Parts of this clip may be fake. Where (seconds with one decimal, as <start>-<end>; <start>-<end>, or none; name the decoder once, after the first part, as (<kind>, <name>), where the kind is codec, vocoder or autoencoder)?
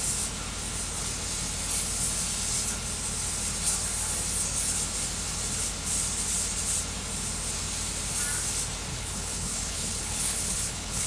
8.9-11.1 (codec, HILCodec)